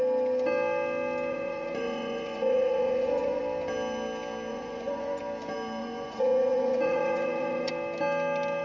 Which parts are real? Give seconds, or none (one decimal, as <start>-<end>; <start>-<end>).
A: 0.0-1.3; 3.4-4.5; 5.2-5.8; 7.7-8.6